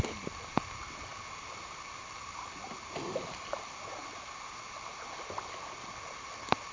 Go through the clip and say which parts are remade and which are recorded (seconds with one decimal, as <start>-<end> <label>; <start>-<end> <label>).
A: 0.0-6.7 recorded